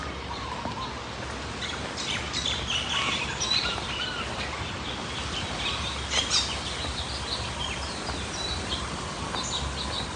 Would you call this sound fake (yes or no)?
no